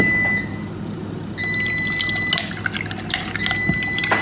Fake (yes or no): no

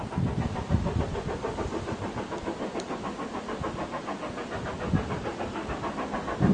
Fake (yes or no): no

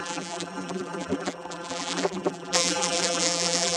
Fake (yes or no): yes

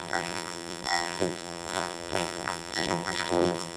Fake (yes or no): yes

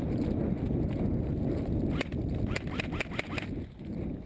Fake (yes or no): no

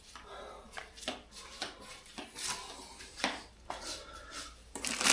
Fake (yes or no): yes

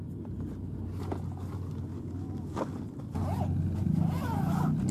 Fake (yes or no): no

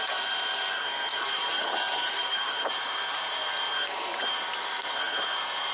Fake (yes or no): yes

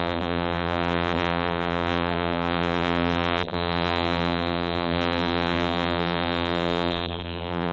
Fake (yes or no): yes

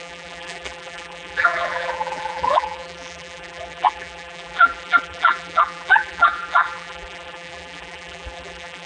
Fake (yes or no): yes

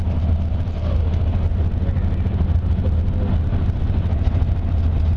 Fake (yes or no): no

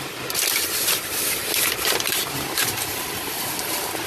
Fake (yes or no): yes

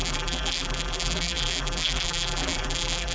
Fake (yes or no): yes